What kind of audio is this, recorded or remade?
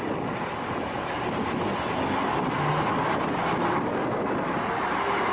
recorded